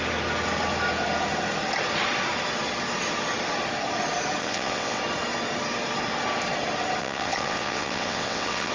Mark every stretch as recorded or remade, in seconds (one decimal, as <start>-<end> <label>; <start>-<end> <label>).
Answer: 0.0-4.4 recorded; 4.4-5.0 remade; 5.0-7.0 recorded; 7.0-8.7 remade